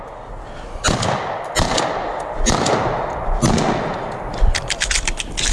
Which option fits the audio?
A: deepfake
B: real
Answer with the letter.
B